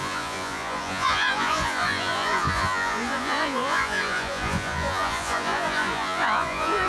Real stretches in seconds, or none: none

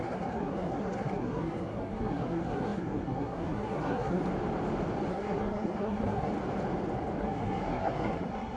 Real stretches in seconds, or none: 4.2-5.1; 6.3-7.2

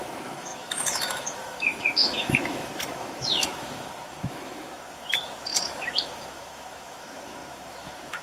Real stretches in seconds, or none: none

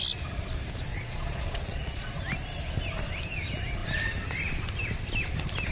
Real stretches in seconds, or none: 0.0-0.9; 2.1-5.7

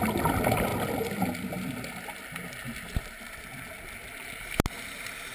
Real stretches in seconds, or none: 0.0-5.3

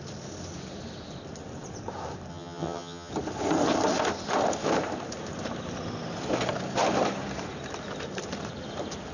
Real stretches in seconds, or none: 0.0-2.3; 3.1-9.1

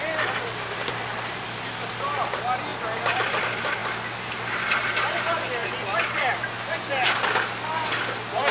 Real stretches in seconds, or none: 0.0-8.5

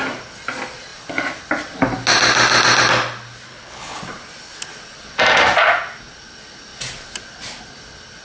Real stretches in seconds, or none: 0.0-3.5; 4.0-8.2